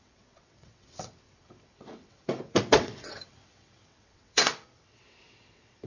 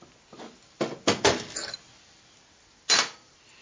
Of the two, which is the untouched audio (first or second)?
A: second